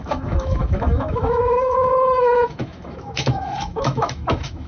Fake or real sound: fake